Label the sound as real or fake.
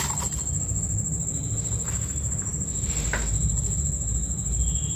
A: real